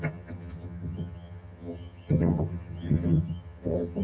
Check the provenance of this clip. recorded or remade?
remade